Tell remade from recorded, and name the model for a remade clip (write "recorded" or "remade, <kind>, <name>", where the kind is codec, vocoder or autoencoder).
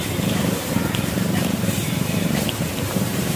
remade, vocoder, BigVGAN v2